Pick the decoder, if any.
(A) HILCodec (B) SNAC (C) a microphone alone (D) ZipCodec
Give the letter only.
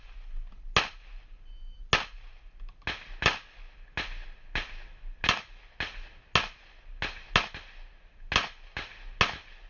C